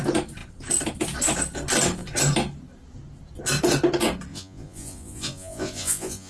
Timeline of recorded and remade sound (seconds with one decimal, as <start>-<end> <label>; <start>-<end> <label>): 0.0-4.3 recorded; 4.3-6.3 remade